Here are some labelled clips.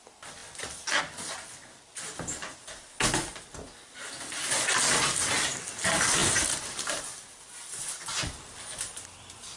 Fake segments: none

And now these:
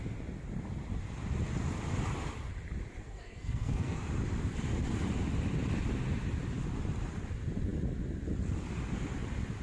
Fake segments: 3.0-4.0 (codec, SNAC)